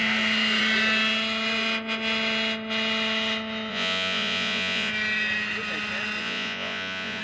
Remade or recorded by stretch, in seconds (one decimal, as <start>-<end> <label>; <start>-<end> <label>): 0.0-3.7 recorded; 3.7-4.9 remade; 4.9-6.2 recorded; 6.2-7.2 remade